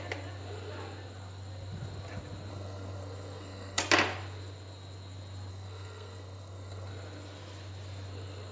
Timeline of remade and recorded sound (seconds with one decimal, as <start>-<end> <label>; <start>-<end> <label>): 0.0-2.5 recorded; 2.5-3.8 remade; 3.8-5.5 recorded; 5.5-6.9 remade; 6.9-8.5 recorded